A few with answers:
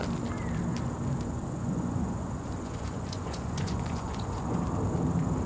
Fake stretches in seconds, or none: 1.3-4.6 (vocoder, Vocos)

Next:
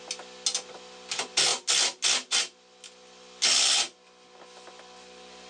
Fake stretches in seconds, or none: none

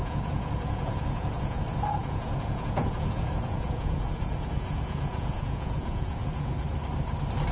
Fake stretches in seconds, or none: 0.0-1.6 (vocoder, Vocos); 2.0-6.5

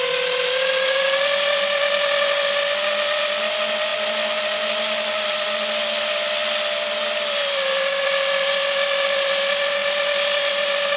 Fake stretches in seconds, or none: none

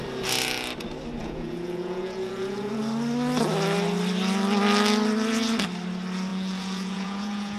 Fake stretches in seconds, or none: 1.2-2.8 (vocoder, Vocos); 6.3-7.6

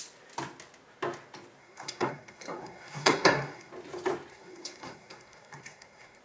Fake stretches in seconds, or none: 1.6-3.7 (codec, SNAC); 4.3-6.2

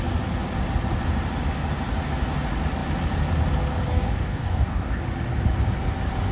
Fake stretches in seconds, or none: 3.9-5.0 (codec, DAC)